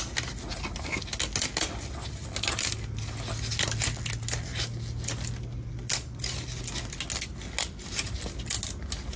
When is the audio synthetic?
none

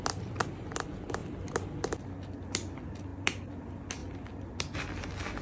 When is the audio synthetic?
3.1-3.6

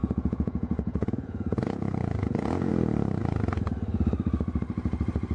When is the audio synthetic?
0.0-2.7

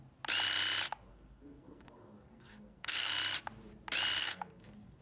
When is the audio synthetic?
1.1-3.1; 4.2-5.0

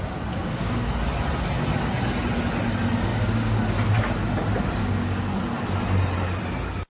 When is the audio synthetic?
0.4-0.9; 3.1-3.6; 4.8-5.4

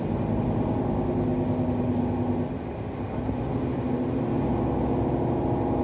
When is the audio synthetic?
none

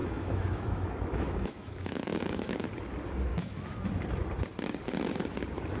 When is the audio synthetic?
0.0-2.7; 3.3-3.9